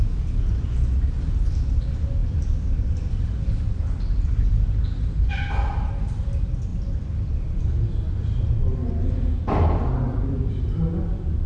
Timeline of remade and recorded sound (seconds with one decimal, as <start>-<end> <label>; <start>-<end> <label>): 0.0-11.5 recorded